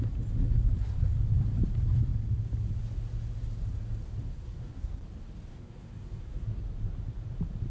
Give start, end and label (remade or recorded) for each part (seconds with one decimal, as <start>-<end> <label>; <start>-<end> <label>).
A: 0.0-4.3 recorded; 4.3-5.0 remade; 5.0-5.5 recorded; 5.5-6.6 remade; 6.6-7.7 recorded